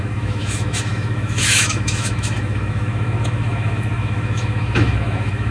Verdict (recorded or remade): remade